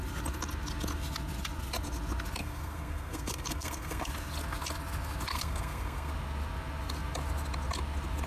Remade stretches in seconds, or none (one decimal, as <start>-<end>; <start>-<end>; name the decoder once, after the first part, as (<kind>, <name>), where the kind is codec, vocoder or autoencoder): 2.4-4.1 (codec, SNAC); 5.3-6.1